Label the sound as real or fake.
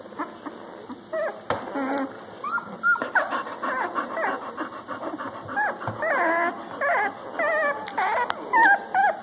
real